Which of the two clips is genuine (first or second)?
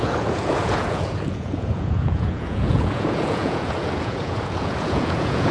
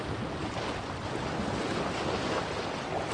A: second